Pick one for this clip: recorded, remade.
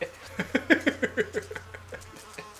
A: remade